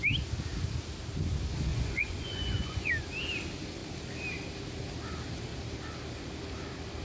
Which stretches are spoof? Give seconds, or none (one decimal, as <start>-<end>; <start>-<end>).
1.7-2.9